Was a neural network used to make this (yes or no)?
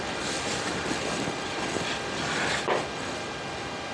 no